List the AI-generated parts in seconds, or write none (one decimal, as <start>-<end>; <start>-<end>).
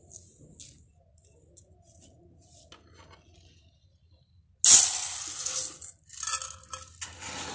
none